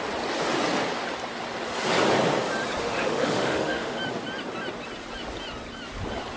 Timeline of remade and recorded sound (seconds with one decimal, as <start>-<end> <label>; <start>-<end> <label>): 0.0-2.8 recorded; 2.8-4.0 remade; 4.0-6.4 recorded